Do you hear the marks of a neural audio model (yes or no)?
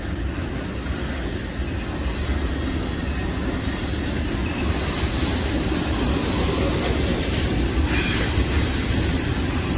no